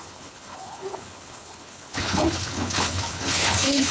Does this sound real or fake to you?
fake